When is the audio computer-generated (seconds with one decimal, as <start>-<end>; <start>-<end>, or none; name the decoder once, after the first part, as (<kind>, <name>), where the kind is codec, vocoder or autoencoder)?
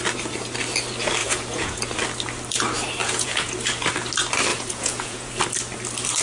1.2-1.8 (vocoder, Vocos); 3.0-3.5; 4.5-5.3